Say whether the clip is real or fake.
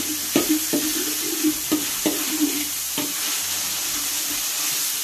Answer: real